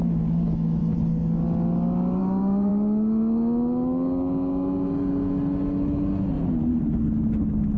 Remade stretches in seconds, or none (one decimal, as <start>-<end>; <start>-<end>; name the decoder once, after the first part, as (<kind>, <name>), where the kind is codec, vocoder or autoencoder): none